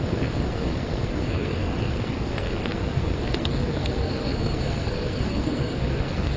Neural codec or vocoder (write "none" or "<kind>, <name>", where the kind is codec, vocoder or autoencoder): codec, SNAC